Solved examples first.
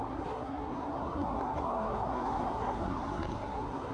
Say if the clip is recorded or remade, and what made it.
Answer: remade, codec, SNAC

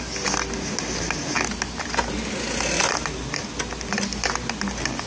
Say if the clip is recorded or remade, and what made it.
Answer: recorded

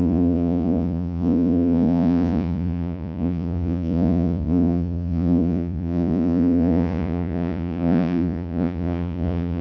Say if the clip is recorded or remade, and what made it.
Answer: remade, vocoder, Vocos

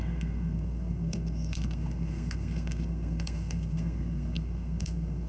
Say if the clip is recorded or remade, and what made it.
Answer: remade, codec, SNAC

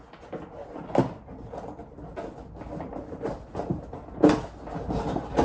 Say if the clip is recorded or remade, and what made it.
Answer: recorded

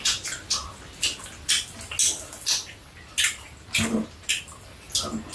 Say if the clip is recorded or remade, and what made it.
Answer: recorded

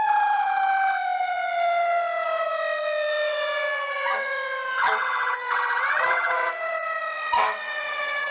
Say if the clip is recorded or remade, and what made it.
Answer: remade, vocoder, WaveNeXt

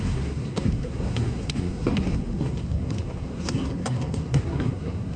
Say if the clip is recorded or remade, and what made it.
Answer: remade, codec, SNAC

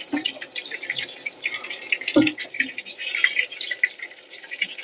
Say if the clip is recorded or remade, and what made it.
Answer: remade, vocoder, BigVGAN v2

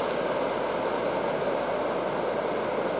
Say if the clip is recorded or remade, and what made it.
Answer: recorded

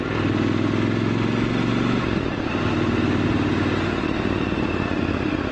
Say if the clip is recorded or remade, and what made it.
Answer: recorded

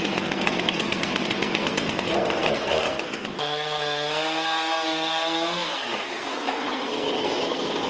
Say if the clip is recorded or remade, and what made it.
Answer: remade, codec, SNAC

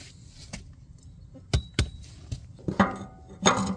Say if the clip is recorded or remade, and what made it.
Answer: recorded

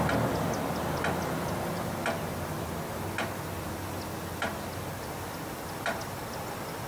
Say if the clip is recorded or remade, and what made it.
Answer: recorded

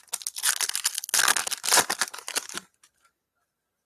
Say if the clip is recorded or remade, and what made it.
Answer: recorded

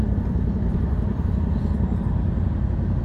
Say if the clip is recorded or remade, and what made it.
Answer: recorded